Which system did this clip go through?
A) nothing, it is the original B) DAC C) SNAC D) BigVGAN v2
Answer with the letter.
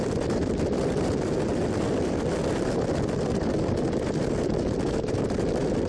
A